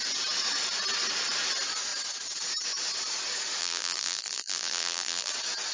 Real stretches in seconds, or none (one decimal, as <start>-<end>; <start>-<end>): 0.0-3.6; 5.3-5.7